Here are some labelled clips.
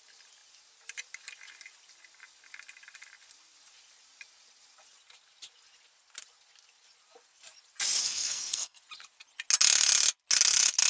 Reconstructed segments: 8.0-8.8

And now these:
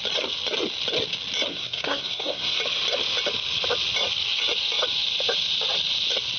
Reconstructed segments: 1.5-2.6

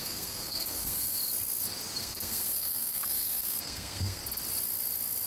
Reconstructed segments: 0.0-1.2; 2.0-4.2

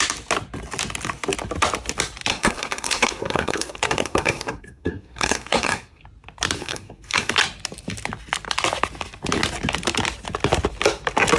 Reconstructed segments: 2.3-6.0; 6.6-7.3

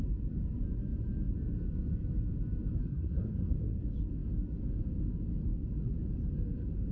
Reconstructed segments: 2.8-3.8

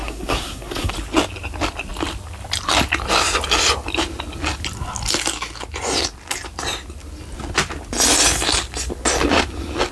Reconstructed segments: 0.0-0.9